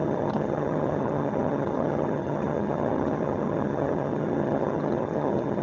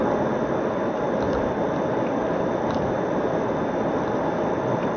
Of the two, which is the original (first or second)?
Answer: second